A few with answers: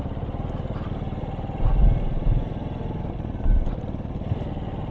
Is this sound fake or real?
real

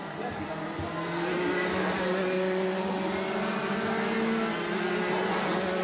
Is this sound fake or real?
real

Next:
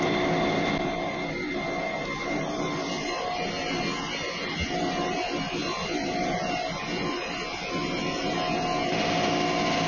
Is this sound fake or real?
real